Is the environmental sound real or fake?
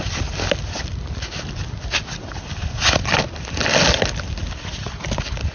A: real